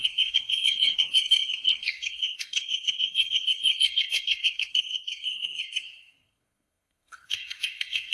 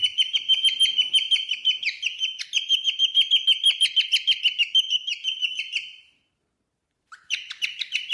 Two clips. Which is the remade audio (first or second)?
first